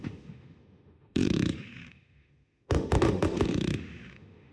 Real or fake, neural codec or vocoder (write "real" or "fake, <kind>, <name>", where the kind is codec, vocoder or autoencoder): fake, autoencoder, DAC-VAE